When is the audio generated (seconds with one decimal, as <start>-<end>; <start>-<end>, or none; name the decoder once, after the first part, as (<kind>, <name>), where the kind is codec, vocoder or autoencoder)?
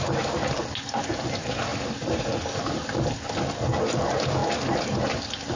none